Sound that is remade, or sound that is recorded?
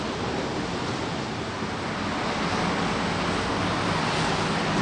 recorded